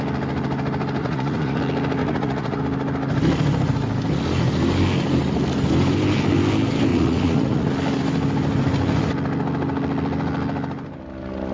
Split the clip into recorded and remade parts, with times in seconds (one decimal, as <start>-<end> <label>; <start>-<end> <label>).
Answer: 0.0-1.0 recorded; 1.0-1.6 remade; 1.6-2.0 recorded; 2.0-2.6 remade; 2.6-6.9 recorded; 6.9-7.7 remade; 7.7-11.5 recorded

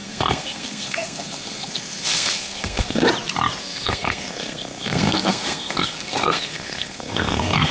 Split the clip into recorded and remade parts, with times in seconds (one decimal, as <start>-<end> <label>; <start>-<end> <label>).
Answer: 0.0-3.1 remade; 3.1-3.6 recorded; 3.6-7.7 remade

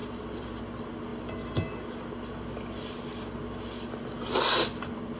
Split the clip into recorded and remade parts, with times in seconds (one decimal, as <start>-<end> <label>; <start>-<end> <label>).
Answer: 0.0-0.6 remade; 0.6-5.2 recorded

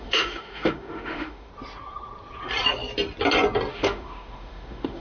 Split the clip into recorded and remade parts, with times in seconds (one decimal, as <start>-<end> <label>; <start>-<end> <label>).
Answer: 0.0-1.5 remade; 1.5-3.7 recorded; 3.7-5.0 remade

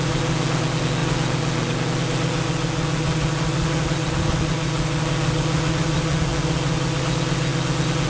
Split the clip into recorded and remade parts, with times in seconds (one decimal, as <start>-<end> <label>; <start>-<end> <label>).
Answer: 0.0-6.3 recorded; 6.3-7.0 remade; 7.0-8.1 recorded

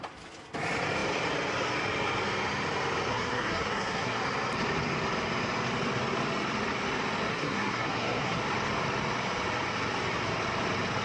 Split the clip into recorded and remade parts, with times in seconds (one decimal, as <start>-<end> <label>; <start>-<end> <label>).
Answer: 0.0-3.1 recorded; 3.1-4.2 remade; 4.2-7.3 recorded; 7.3-8.4 remade; 8.4-11.0 recorded